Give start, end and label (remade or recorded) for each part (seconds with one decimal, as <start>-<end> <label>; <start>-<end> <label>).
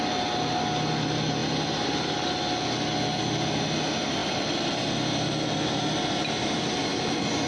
0.0-4.2 recorded; 4.2-4.8 remade; 4.8-7.5 recorded